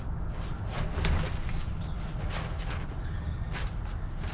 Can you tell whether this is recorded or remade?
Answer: recorded